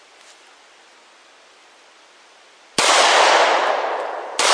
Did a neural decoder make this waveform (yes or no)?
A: no